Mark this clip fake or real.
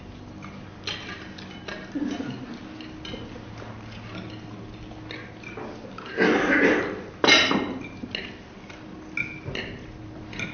real